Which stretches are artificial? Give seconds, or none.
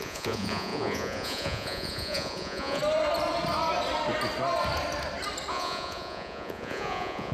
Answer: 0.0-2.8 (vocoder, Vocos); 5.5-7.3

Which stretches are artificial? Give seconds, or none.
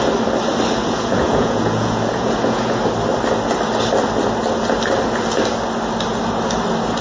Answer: 0.8-2.8 (vocoder, Vocos)